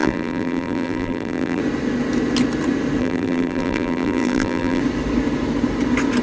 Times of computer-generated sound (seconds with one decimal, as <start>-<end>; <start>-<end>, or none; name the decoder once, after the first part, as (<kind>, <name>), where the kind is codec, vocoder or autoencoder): 0.0-1.6 (vocoder, BigVGAN v2); 3.0-4.8